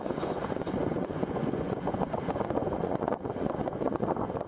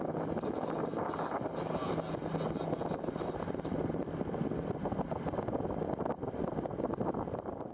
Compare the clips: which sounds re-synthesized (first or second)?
first